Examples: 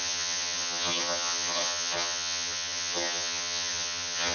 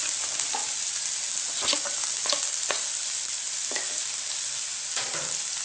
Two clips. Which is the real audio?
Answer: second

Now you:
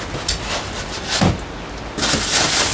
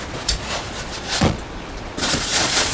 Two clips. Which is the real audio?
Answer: first